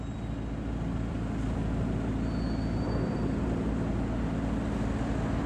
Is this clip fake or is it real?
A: real